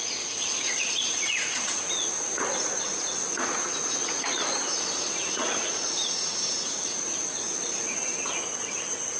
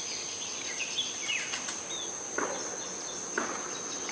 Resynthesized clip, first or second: first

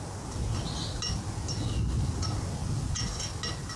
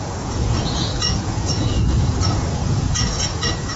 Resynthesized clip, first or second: second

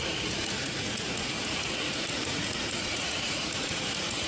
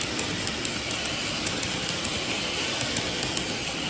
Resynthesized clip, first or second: first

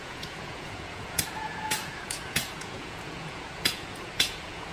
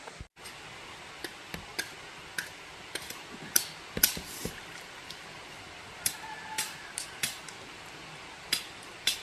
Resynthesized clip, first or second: first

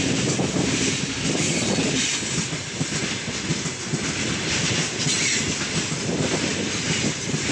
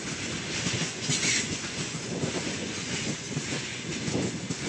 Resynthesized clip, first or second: second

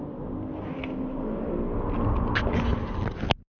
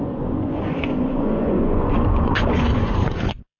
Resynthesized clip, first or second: second